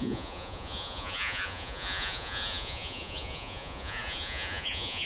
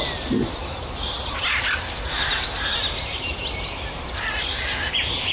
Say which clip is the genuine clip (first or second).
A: second